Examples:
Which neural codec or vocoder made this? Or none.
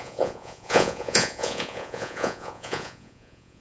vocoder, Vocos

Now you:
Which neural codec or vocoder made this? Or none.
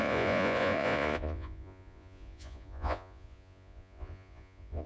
vocoder, Vocos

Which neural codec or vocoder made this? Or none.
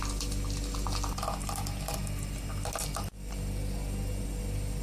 none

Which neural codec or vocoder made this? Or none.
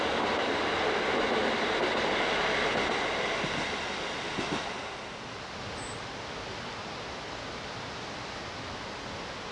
none